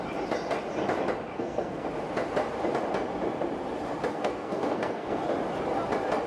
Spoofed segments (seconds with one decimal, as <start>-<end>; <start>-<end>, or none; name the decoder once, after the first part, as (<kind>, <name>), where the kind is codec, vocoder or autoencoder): 1.3-1.9 (codec, SNAC); 4.1-5.2